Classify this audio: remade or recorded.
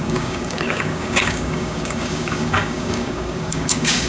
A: remade